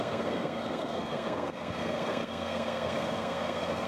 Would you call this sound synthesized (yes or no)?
yes